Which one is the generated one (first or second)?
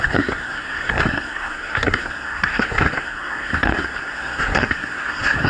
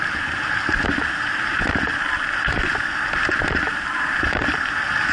first